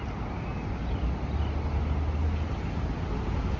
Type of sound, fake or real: real